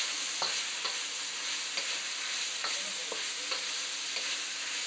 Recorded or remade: recorded